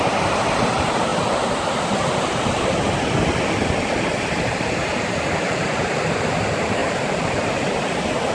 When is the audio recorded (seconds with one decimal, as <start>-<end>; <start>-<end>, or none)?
0.0-8.3